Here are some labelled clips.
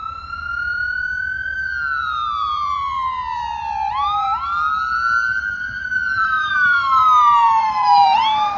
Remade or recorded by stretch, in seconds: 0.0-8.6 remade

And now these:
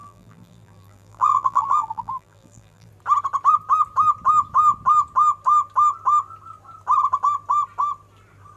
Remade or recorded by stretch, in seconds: 0.0-2.9 remade; 2.9-8.6 recorded

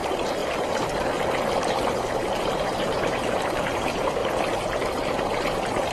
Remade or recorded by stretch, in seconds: 0.0-0.4 remade; 0.4-2.6 recorded; 2.6-4.2 remade; 4.2-5.1 recorded; 5.1-5.9 remade

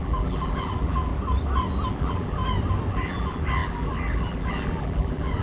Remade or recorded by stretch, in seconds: 0.0-1.1 remade; 1.1-1.9 recorded; 1.9-2.4 remade; 2.4-2.9 recorded; 2.9-5.4 remade

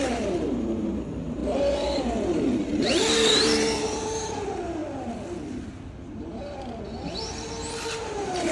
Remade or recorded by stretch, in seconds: 0.0-1.4 remade; 1.4-2.0 recorded; 2.0-4.8 remade; 4.8-7.9 recorded; 7.9-8.5 remade